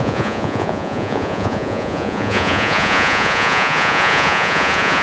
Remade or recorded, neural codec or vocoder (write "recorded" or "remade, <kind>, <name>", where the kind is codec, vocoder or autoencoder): remade, vocoder, Vocos